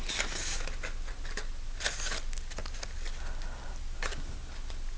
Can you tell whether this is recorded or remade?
recorded